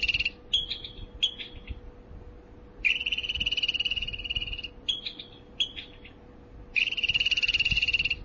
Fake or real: real